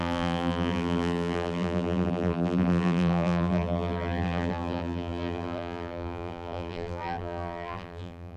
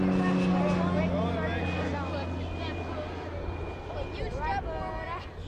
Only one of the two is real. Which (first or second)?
second